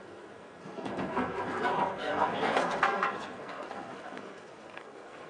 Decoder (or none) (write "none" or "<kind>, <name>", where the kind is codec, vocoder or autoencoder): codec, SNAC